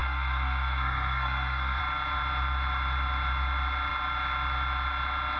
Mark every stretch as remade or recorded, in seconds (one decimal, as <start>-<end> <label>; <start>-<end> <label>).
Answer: 0.0-1.8 remade; 1.8-5.4 recorded